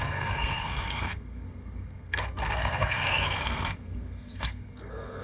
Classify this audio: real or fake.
fake